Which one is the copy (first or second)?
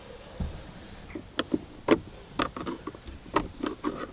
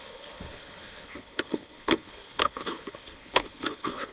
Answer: second